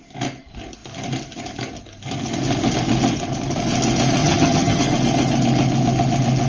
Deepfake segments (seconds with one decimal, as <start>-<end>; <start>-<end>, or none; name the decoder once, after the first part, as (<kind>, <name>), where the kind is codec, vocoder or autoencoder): 4.2-4.8 (vocoder, HiFi-GAN)